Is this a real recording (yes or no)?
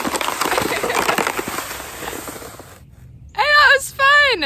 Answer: yes